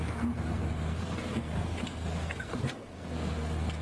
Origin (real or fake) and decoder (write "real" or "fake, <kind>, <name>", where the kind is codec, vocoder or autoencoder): fake, codec, SNAC